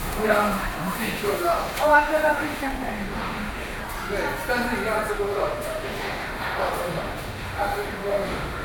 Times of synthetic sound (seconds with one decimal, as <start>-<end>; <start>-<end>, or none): 0.0-3.8; 5.1-8.6